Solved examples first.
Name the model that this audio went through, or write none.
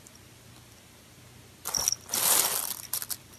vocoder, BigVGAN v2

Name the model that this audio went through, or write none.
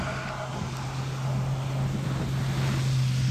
none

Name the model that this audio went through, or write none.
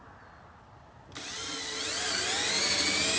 none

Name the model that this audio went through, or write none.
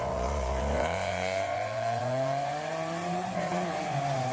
vocoder, Vocos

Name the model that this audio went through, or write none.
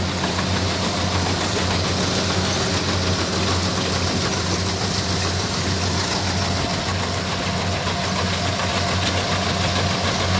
none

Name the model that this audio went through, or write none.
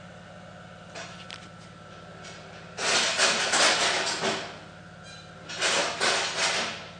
none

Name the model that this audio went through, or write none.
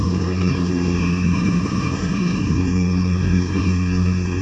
codec, SNAC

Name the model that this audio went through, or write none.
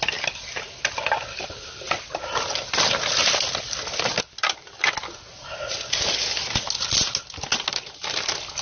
none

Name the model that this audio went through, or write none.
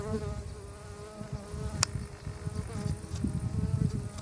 none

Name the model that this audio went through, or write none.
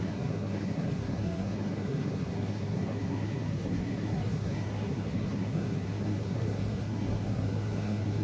codec, SNAC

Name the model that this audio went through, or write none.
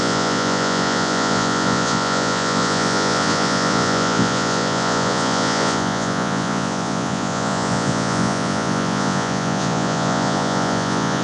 vocoder, Vocos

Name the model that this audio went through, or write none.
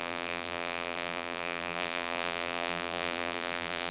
vocoder, BigVGAN v2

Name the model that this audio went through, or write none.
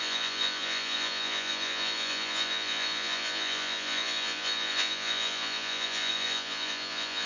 vocoder, Vocos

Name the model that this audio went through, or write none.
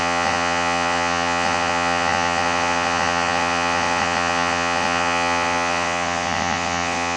vocoder, WaveNeXt